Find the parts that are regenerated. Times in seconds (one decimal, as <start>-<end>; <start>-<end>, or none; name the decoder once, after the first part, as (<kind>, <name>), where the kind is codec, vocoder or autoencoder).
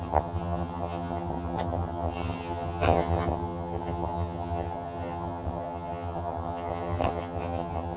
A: 0.0-8.0 (vocoder, HiFi-GAN)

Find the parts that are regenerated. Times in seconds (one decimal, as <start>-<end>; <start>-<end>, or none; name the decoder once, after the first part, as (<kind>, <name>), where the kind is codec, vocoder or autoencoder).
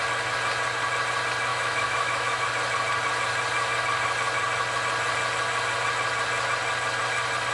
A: 1.5-2.5 (autoencoder, DAC-VAE)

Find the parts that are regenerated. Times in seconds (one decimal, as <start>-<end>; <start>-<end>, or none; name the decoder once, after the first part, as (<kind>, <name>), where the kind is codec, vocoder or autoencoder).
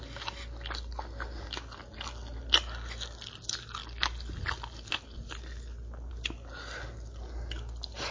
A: none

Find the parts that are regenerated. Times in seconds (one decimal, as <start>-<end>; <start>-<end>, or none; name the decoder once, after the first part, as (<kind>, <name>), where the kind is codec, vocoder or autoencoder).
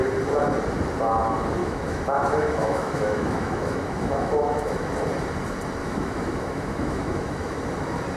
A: 1.6-4.9 (autoencoder, DAC-VAE); 5.8-7.6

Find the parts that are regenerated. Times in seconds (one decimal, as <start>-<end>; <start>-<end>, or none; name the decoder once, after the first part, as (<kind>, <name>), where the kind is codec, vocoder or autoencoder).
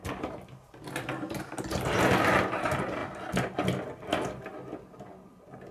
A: none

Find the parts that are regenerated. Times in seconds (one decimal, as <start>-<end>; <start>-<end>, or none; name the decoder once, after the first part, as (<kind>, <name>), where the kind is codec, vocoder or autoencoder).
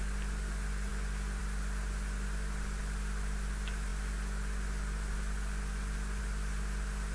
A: none